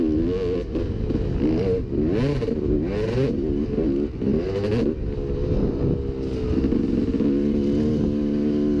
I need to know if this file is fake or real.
real